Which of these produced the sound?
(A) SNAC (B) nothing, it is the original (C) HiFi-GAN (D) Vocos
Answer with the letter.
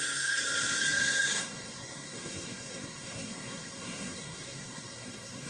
A